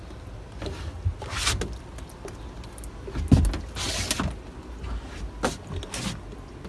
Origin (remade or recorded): recorded